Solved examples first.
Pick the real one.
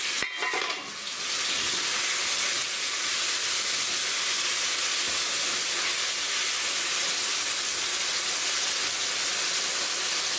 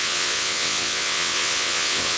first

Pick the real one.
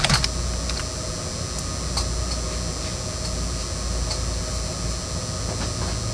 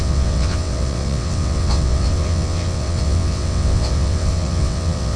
first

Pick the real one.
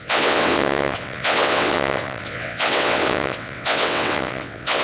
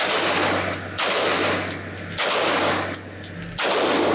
second